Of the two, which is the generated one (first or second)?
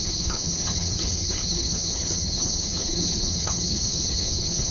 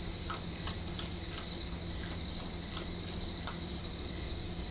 first